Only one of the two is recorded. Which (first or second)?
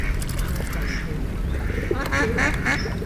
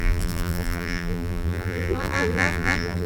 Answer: first